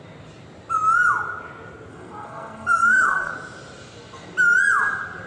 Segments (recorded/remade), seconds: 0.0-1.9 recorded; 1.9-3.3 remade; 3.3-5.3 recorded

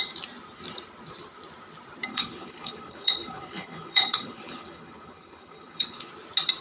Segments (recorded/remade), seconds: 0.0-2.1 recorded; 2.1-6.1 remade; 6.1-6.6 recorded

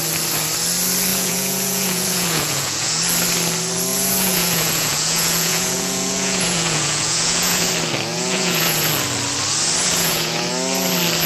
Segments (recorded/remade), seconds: 0.0-1.1 recorded; 1.1-3.0 remade; 3.0-3.9 recorded; 3.9-7.7 remade; 7.7-8.1 recorded; 8.1-8.9 remade; 8.9-9.8 recorded; 9.8-10.5 remade; 10.5-11.3 recorded

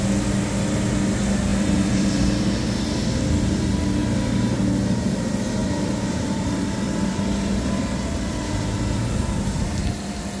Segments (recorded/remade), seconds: 0.0-1.5 recorded; 1.5-2.2 remade; 2.2-4.0 recorded; 4.0-4.7 remade; 4.7-5.6 recorded; 5.6-9.6 remade; 9.6-10.4 recorded

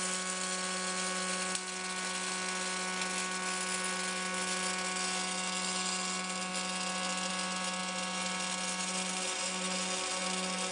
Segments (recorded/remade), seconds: 0.0-10.7 recorded